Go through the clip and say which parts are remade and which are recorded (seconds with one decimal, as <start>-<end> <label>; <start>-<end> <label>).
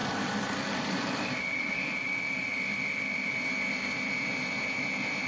0.0-2.5 remade; 2.5-5.3 recorded